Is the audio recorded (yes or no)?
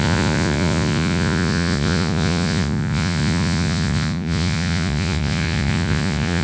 no